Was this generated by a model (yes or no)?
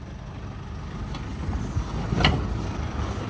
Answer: no